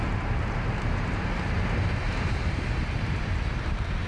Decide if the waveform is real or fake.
fake